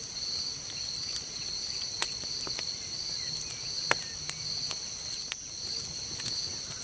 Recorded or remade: recorded